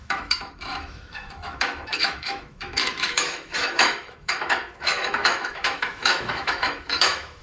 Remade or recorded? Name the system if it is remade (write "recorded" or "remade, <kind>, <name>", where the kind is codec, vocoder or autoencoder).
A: remade, autoencoder, DAC-VAE